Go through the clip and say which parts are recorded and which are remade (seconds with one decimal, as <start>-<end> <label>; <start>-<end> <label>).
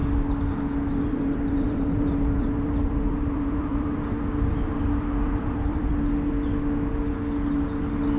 0.0-1.0 recorded; 1.0-5.9 remade; 5.9-8.2 recorded